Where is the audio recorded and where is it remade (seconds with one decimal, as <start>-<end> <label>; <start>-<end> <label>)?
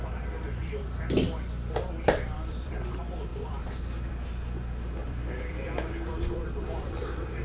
0.0-0.6 recorded; 0.6-2.8 remade; 2.8-3.3 recorded; 3.3-4.1 remade; 4.1-5.0 recorded; 5.0-7.4 remade